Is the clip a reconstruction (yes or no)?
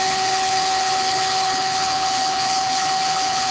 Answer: yes